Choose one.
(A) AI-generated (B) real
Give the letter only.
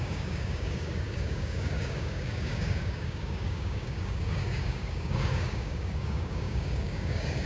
A